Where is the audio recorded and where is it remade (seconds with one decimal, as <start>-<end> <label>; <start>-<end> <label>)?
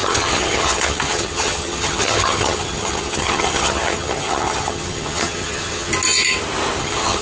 0.0-5.9 remade; 5.9-6.8 recorded; 6.8-7.2 remade